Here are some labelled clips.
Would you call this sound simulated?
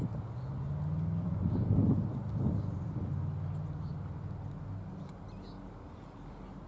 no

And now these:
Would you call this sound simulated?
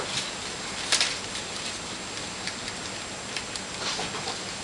no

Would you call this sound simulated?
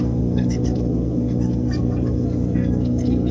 yes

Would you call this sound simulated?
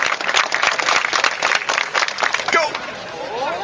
no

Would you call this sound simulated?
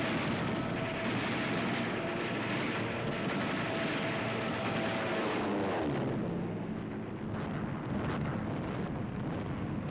no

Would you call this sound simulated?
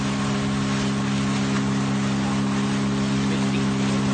no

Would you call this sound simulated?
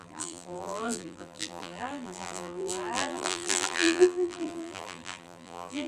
yes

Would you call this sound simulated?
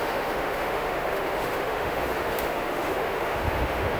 yes